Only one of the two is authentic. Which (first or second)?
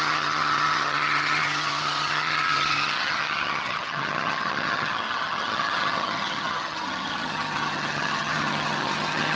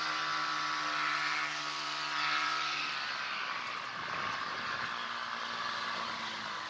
second